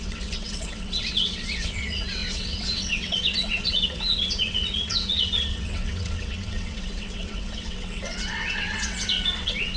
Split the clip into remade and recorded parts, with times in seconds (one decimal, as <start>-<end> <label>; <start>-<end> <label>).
0.0-9.8 remade